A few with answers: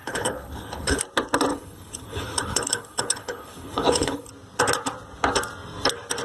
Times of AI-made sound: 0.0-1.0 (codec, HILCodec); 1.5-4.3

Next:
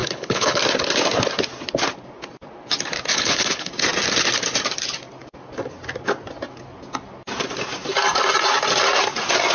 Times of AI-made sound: 0.0-0.6 (codec, HILCodec); 3.1-3.7

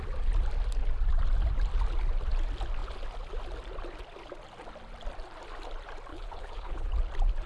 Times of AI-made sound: 6.1-6.9 (codec, HILCodec)

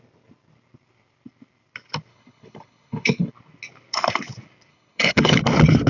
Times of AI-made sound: 2.1-3.3 (codec, HILCodec); 4.7-5.4

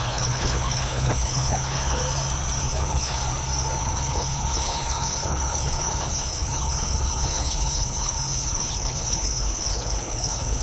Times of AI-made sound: 0.0-2.0 (codec, HILCodec); 2.6-3.2; 3.8-10.6

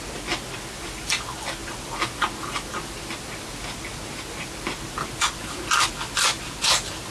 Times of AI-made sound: none